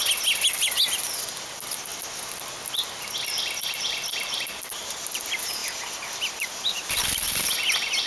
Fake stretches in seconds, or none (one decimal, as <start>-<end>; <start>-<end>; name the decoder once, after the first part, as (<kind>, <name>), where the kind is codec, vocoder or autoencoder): none